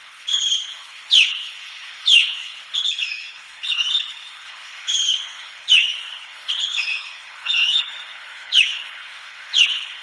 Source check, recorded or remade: remade